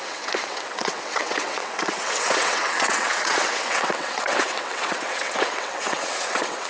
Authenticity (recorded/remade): remade